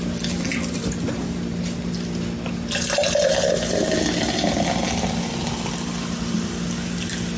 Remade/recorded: recorded